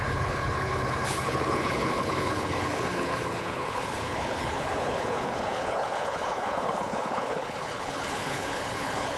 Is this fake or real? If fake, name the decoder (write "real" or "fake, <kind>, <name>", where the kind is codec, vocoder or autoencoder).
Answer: fake, codec, HILCodec